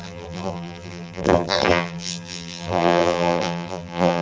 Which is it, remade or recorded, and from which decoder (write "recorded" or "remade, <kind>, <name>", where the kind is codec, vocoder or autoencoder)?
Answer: remade, vocoder, BigVGAN v2